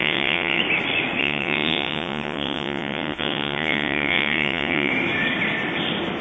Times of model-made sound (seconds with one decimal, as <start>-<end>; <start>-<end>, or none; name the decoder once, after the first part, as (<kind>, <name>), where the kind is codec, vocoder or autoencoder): 0.0-0.6 (vocoder, WaveNeXt); 1.2-4.9